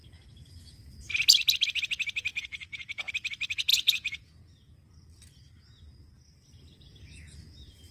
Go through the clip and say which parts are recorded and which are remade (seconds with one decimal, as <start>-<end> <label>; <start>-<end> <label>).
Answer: 0.0-2.3 recorded; 2.3-3.1 remade; 3.1-3.7 recorded; 3.7-4.3 remade; 4.3-7.9 recorded